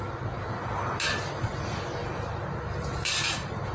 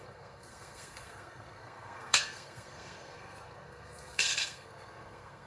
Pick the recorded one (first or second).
first